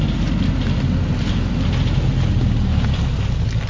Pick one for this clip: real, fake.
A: real